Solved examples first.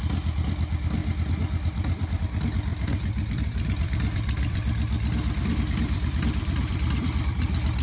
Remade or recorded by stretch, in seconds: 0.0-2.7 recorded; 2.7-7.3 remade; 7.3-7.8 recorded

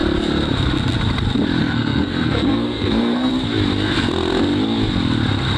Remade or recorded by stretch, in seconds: 0.0-1.6 recorded; 1.6-3.3 remade; 3.3-5.6 recorded

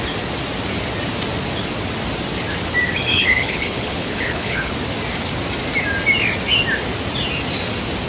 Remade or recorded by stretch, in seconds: 0.0-3.1 recorded; 3.1-4.7 remade; 4.7-8.1 recorded

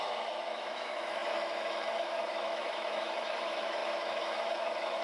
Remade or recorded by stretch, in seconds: 0.0-5.0 remade

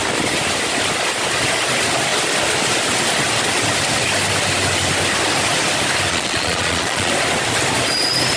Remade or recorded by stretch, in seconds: 0.0-6.1 recorded; 6.1-7.1 remade; 7.1-8.4 recorded